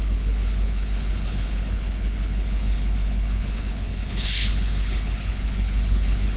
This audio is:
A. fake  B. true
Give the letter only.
A